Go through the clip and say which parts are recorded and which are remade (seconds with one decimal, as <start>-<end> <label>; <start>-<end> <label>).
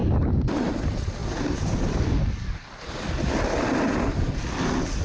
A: 0.0-5.0 recorded